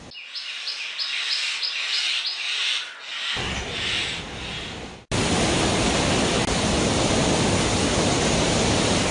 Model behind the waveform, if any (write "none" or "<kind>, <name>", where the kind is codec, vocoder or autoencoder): none